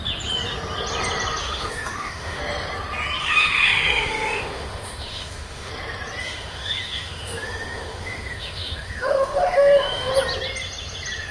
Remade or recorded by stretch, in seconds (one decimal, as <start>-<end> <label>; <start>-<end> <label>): 0.0-1.4 recorded; 1.4-2.4 remade; 2.4-3.2 recorded; 3.2-5.7 remade; 5.7-6.2 recorded; 6.2-10.1 remade; 10.1-11.3 recorded